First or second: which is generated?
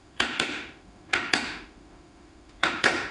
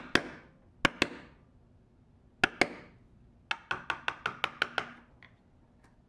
first